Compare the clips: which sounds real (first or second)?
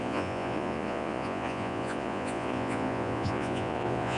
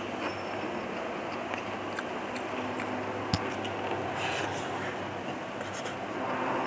second